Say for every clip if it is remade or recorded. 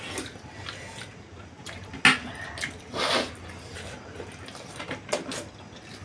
recorded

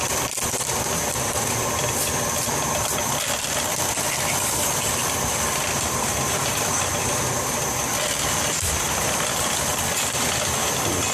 remade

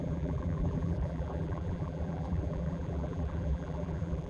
remade